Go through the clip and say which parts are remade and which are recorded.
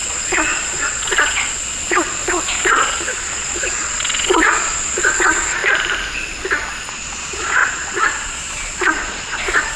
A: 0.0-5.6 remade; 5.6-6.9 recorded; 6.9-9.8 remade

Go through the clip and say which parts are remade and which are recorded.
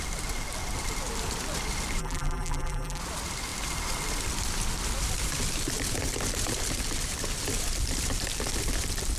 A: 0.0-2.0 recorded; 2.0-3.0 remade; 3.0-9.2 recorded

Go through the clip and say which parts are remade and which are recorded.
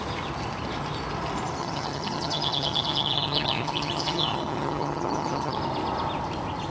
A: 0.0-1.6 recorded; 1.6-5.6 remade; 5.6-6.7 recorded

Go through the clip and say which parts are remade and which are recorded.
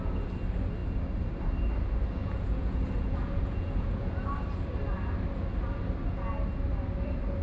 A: 0.0-2.2 recorded; 2.2-4.3 remade; 4.3-7.4 recorded